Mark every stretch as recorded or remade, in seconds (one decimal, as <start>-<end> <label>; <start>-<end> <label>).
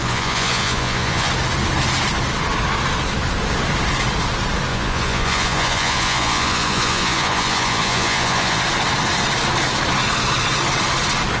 0.0-1.3 remade; 1.3-4.7 recorded; 4.7-8.6 remade; 8.6-11.4 recorded